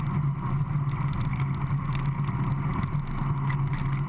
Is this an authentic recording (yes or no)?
yes